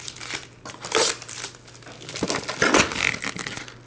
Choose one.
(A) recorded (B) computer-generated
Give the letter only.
A